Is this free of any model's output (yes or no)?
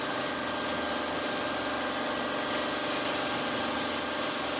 yes